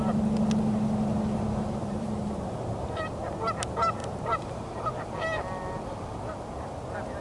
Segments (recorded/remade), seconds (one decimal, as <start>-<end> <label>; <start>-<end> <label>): 0.0-1.8 recorded; 1.8-3.1 remade; 3.1-4.0 recorded; 4.0-4.9 remade; 4.9-7.2 recorded